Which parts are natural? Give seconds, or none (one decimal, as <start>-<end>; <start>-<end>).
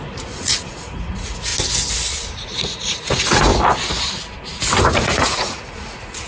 1.5-2.3; 3.5-4.8